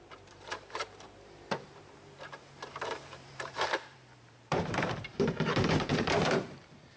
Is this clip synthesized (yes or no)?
yes